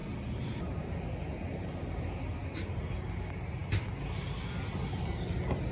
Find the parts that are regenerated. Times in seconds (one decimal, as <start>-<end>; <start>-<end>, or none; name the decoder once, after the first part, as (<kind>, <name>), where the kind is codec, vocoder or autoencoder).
none